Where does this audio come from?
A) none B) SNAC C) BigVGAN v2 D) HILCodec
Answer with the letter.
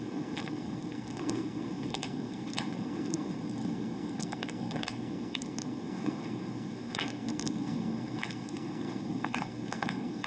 B